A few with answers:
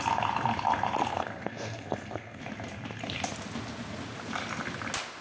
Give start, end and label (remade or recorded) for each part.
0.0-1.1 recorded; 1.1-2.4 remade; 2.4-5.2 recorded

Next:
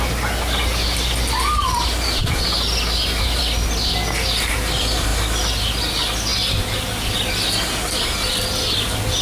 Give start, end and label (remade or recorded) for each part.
0.0-9.2 recorded

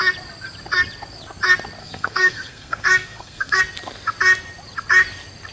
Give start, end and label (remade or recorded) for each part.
0.0-1.8 recorded; 1.8-3.6 remade; 3.6-5.5 recorded

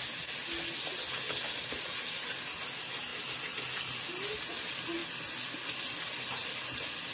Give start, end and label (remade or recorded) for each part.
0.0-7.1 recorded

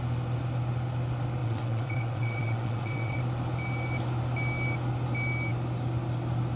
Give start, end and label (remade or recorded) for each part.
0.0-1.4 recorded; 1.4-3.2 remade; 3.2-6.6 recorded

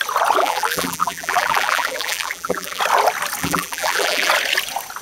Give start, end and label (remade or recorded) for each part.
0.0-0.4 recorded; 0.4-2.8 remade; 2.8-3.4 recorded; 3.4-4.3 remade; 4.3-5.0 recorded